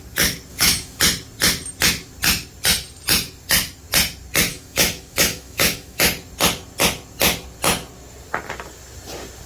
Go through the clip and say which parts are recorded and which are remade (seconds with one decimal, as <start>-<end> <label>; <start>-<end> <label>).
0.0-0.5 recorded; 0.5-1.0 remade; 1.0-4.5 recorded; 4.5-6.0 remade; 6.0-9.5 recorded